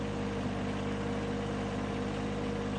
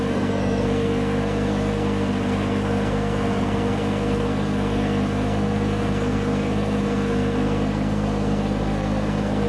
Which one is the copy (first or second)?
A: second